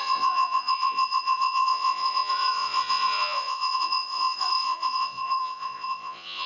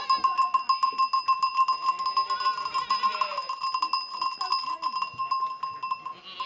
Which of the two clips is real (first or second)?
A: second